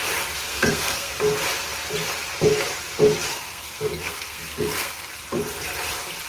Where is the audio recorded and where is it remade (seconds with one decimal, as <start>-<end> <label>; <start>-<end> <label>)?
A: 0.0-0.5 recorded; 0.5-1.1 remade; 1.1-3.3 recorded; 3.3-5.1 remade; 5.1-6.3 recorded